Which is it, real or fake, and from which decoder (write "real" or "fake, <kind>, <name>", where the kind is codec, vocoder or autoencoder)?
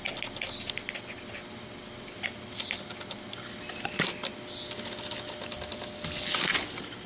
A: real